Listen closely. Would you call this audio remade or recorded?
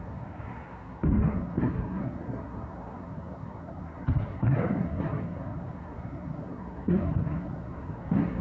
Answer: remade